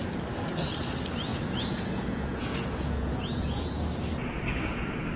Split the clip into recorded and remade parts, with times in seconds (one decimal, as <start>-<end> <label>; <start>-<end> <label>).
0.0-1.3 recorded; 1.3-3.7 remade; 3.7-5.2 recorded